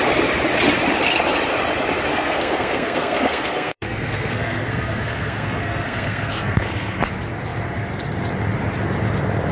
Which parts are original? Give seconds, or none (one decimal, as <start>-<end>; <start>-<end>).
0.0-2.1; 7.1-9.5